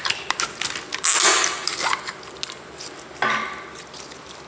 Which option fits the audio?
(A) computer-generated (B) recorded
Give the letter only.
B